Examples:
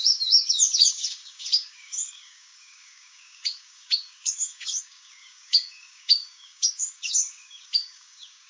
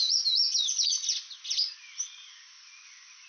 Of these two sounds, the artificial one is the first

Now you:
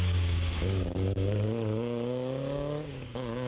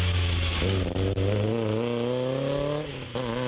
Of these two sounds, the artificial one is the first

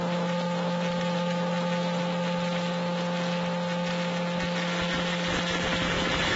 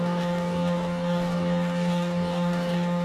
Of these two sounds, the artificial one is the second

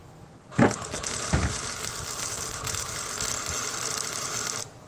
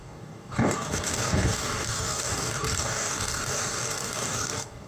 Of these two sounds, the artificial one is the second